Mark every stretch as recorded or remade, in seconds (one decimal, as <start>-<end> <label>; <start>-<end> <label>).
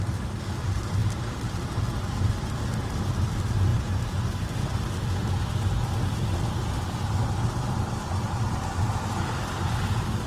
0.0-10.3 recorded